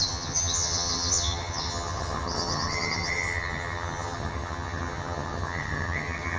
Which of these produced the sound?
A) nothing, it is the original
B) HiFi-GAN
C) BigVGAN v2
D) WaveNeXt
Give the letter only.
B